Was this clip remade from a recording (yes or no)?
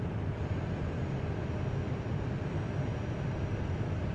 no